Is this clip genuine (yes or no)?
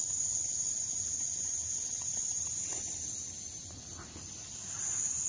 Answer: yes